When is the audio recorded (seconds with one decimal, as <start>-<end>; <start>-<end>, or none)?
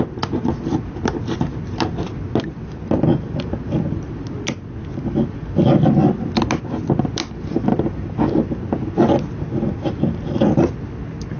0.0-11.4